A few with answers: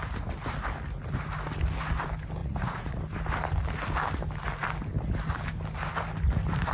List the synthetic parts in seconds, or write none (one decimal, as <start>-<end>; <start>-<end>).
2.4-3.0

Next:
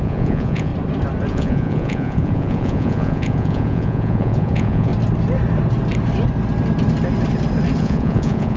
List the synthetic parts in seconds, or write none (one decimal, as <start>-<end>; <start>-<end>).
0.0-0.7; 1.3-4.9; 7.8-8.6

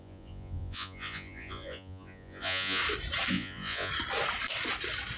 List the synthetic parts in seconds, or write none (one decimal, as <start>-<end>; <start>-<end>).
0.0-2.8; 3.3-3.9